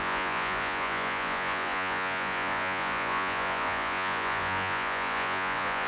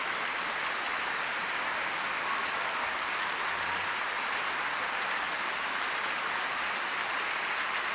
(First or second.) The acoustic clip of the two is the second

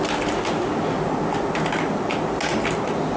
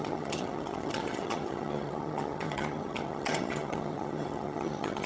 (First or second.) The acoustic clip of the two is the first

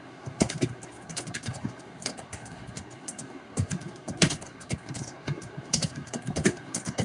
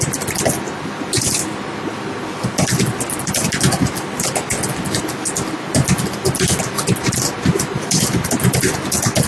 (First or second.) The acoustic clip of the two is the second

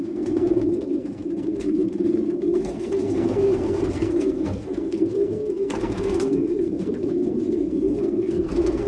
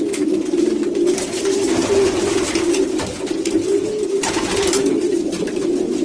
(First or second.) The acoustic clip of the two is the second